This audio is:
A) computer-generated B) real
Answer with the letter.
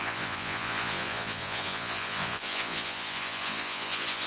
A